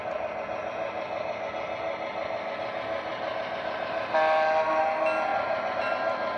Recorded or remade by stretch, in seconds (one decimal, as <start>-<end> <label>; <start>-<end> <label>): 0.0-3.1 recorded; 3.1-3.9 remade; 3.9-5.3 recorded; 5.3-5.9 remade; 5.9-6.4 recorded